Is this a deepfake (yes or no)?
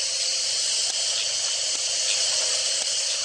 no